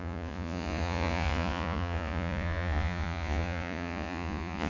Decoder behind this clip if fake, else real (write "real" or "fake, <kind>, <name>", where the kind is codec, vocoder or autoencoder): fake, vocoder, Vocos